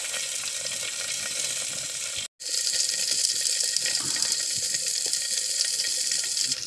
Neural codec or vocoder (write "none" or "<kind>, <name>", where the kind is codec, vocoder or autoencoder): none